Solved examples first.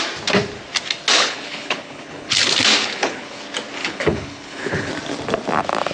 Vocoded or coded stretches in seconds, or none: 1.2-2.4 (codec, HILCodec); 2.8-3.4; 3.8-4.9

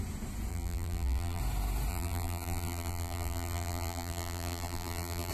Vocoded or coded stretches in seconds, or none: 0.5-1.4 (vocoder, BigVGAN v2); 1.9-5.3

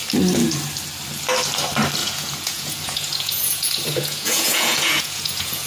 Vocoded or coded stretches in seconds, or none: 2.0-5.7 (vocoder, Vocos)

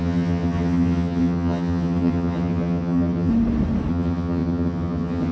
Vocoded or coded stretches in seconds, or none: 0.0-3.3 (vocoder, HiFi-GAN); 3.9-5.3

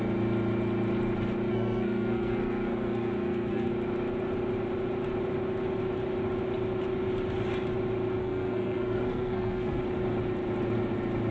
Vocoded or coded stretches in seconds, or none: 1.5-3.7 (codec, SNAC); 8.2-9.8

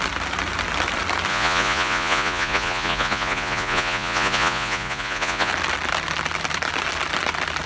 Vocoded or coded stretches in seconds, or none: 1.3-5.5 (vocoder, Vocos)

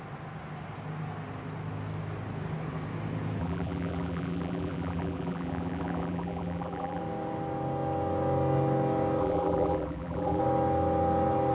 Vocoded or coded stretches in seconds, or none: 3.4-7.0 (vocoder, BigVGAN v2); 9.2-10.4

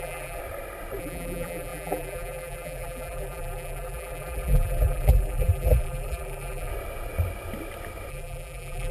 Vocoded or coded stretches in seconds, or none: 0.0-0.4 (vocoder, BigVGAN v2); 1.0-6.7; 8.1-8.9